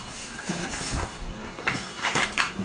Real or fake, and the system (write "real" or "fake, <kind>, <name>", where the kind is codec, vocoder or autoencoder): fake, codec, SNAC